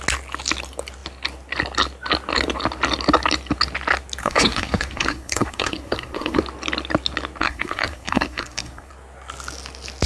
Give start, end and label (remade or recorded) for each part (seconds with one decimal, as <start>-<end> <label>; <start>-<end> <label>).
0.0-4.2 recorded; 4.2-6.4 remade; 6.4-7.4 recorded; 7.4-8.9 remade; 8.9-10.1 recorded